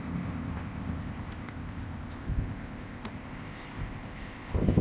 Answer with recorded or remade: remade